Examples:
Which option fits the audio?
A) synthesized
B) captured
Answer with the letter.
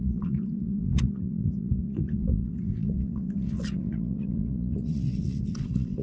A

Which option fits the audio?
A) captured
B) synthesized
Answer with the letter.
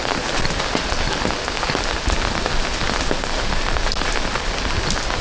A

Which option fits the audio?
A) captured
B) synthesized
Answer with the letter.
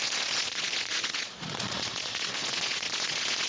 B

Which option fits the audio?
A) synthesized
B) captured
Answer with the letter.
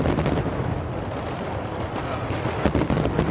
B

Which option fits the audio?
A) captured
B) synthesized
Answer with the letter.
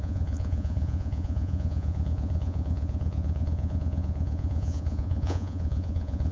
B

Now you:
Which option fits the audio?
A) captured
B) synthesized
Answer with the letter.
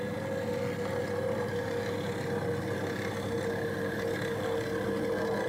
A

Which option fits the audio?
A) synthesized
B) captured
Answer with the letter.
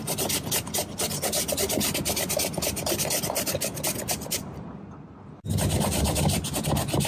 B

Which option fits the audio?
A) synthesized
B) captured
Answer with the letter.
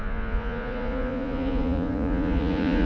A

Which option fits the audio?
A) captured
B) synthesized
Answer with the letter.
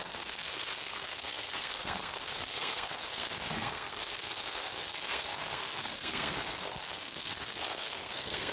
B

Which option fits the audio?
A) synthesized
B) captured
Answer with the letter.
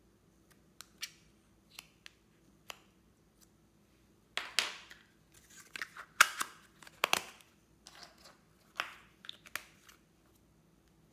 B